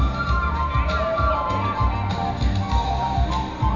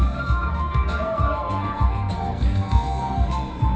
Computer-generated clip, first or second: second